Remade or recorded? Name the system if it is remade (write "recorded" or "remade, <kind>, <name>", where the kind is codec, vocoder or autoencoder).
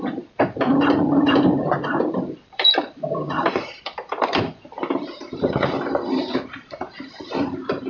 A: remade, vocoder, BigVGAN v2